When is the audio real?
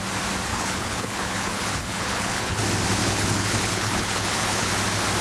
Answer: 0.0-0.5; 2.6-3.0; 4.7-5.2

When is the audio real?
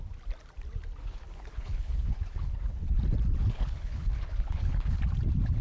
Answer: 0.0-1.0; 3.0-3.4; 5.0-5.6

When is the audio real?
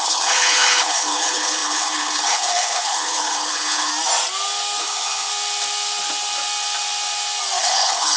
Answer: 3.9-4.8; 5.3-7.6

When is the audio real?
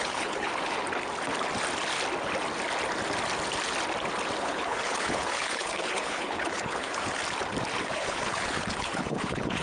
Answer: 0.5-4.4; 7.2-7.8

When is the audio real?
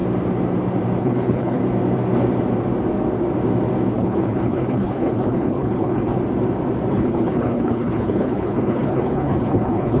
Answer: 0.0-1.0; 1.6-3.9; 6.2-6.9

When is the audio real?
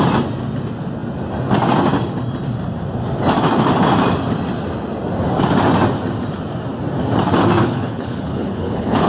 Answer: 0.0-7.6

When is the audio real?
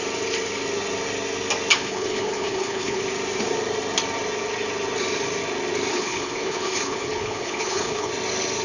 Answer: 0.0-1.7; 3.0-5.9; 8.1-8.6